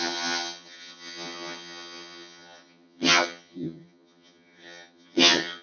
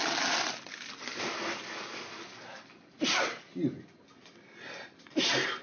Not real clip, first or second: first